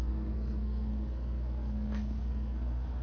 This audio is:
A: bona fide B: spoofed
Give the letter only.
B